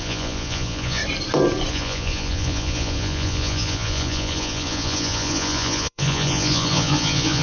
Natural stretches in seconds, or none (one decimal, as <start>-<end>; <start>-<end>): 1.0-1.7